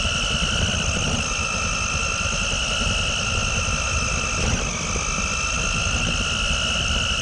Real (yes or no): yes